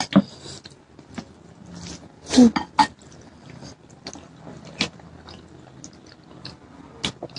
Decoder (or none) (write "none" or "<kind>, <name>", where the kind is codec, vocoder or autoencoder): none